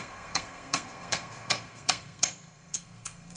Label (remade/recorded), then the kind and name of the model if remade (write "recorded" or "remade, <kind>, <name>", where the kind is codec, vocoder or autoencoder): remade, codec, SNAC